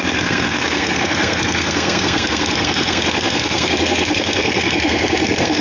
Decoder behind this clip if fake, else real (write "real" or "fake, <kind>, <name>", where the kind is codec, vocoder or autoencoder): fake, codec, SNAC